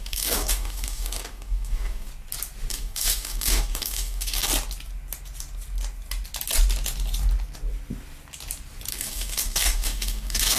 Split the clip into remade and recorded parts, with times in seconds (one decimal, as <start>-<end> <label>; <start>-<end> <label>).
0.0-2.1 remade; 2.1-2.7 recorded; 2.7-4.5 remade; 4.5-8.9 recorded; 8.9-10.6 remade

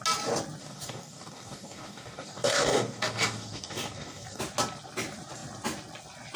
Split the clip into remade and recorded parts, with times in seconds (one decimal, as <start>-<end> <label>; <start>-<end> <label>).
0.0-0.6 recorded; 0.6-4.4 remade; 4.4-6.4 recorded

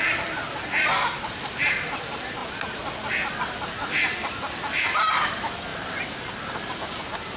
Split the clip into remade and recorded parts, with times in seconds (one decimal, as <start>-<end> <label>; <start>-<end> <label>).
0.0-7.4 recorded

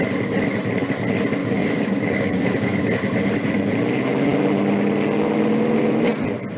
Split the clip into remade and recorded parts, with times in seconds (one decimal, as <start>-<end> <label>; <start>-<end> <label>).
0.0-1.4 recorded; 1.4-2.8 remade; 2.8-6.6 recorded